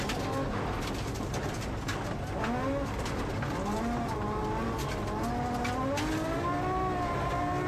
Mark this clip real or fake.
real